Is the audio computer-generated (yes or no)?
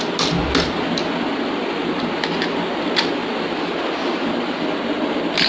no